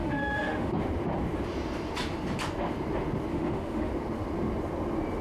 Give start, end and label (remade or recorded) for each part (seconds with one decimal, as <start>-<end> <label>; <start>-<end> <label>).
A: 0.0-0.7 remade; 0.7-3.3 recorded; 3.3-3.9 remade; 3.9-5.2 recorded

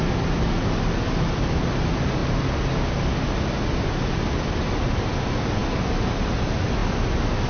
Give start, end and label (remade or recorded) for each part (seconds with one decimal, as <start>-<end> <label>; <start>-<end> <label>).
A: 0.0-7.5 recorded

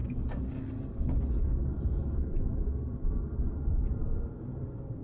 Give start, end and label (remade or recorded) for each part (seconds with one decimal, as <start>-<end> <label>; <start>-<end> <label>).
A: 0.0-5.0 recorded

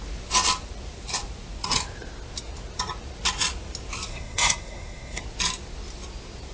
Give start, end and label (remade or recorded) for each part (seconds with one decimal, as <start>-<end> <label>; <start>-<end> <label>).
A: 0.0-4.1 recorded; 4.1-5.2 remade; 5.2-6.5 recorded

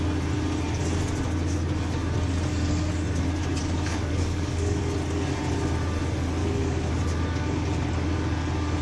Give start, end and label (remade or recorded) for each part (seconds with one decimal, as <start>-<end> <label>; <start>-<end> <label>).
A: 0.0-3.6 recorded; 3.6-4.8 remade; 4.8-6.4 recorded; 6.4-6.9 remade; 6.9-8.8 recorded

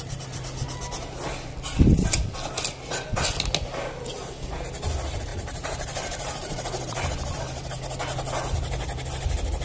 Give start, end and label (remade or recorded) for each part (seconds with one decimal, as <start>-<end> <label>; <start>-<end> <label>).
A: 0.0-5.3 recorded; 5.3-7.4 remade; 7.4-9.6 recorded